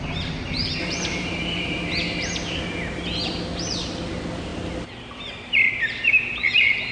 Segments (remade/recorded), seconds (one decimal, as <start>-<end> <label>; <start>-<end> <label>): 0.0-0.6 recorded; 0.6-2.0 remade; 2.0-6.9 recorded